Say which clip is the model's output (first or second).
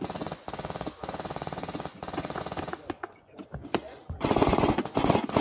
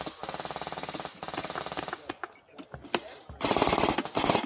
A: first